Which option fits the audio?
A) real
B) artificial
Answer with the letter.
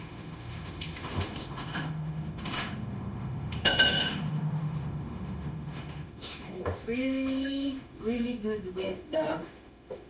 B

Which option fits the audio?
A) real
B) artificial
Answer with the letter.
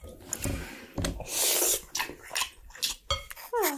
A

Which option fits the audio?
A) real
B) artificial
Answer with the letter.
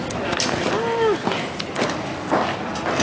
A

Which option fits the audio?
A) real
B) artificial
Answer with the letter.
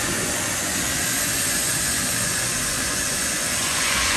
B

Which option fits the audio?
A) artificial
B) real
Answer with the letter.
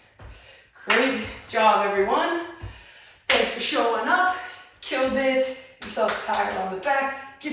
B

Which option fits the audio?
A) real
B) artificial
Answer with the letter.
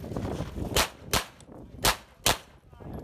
A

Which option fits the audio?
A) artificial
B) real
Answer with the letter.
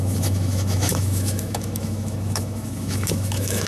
A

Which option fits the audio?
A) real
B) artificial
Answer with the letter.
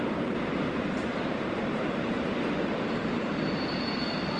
B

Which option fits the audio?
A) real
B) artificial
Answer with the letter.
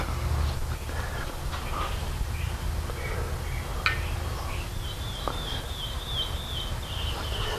A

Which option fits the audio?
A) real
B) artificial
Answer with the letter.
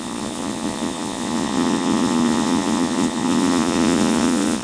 B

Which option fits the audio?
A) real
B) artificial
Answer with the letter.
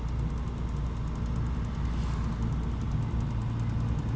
A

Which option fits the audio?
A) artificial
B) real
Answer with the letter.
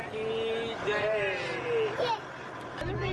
B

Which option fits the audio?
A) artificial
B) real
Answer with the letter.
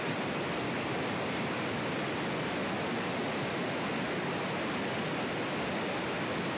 B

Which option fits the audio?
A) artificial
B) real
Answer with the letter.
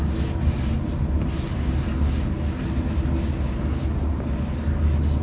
B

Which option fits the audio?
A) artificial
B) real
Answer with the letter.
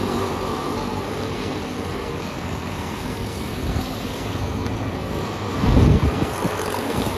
A